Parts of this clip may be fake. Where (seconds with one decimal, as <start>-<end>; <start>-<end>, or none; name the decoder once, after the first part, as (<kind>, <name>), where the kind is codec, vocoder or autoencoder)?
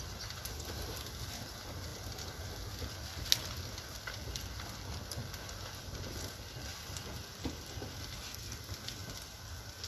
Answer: 6.7-8.4 (vocoder, BigVGAN v2); 9.0-9.9